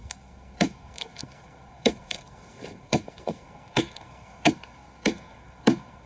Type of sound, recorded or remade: remade